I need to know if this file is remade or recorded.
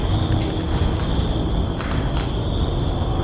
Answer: recorded